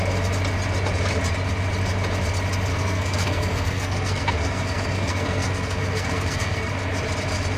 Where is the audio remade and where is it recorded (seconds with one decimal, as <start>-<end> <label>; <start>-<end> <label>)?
0.0-2.7 recorded; 2.7-6.7 remade; 6.7-7.6 recorded